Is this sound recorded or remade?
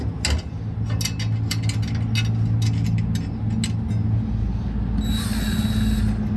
recorded